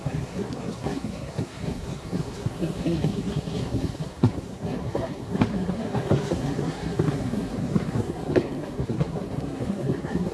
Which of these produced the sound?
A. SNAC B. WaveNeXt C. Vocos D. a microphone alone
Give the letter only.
A